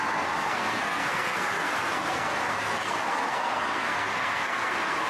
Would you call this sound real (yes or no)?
no